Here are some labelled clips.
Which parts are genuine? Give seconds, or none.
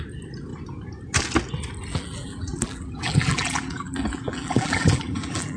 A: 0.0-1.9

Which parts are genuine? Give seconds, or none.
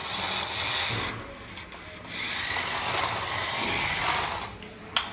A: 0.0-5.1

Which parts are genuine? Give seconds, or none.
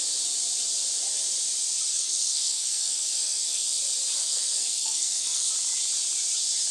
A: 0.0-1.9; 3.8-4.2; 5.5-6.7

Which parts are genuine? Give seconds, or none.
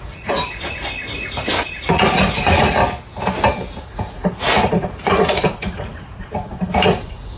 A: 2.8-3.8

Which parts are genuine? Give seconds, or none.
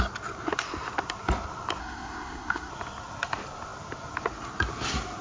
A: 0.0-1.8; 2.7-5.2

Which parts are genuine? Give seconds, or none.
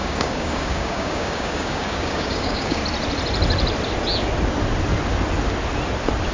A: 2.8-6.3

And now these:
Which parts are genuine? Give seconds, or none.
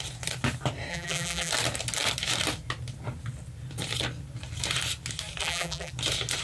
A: 0.0-0.9; 1.5-5.4; 5.9-6.4